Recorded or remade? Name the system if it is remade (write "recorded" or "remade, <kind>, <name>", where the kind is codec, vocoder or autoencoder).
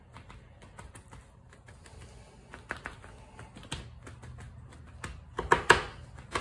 recorded